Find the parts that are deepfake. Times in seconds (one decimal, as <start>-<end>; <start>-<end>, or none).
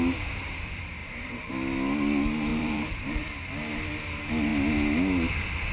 1.0-1.5; 2.5-3.2